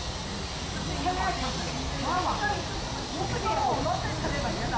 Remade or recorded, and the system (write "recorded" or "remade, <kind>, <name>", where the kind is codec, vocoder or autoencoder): recorded